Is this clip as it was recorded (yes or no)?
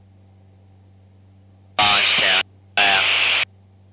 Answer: yes